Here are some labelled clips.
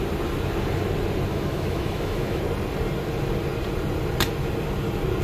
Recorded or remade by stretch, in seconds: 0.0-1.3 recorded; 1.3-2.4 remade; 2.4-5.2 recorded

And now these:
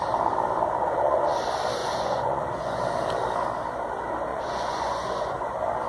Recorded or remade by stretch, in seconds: 0.0-0.8 recorded; 0.8-1.4 remade; 1.4-1.8 recorded; 1.8-2.8 remade; 2.8-4.3 recorded; 4.3-5.5 remade; 5.5-5.9 recorded

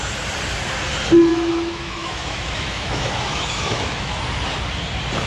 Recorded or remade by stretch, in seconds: 0.0-1.3 recorded; 1.3-4.2 remade; 4.2-5.3 recorded

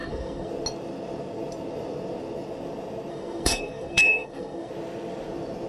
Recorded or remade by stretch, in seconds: 0.0-0.5 remade; 0.5-3.1 recorded; 3.1-4.7 remade; 4.7-5.7 recorded

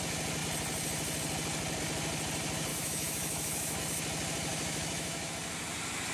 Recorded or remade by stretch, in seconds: 0.0-2.7 recorded; 2.7-3.8 remade; 3.8-4.5 recorded; 4.5-5.3 remade; 5.3-6.1 recorded